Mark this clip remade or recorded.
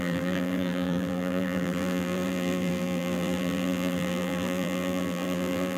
remade